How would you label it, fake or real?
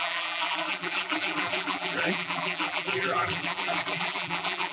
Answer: fake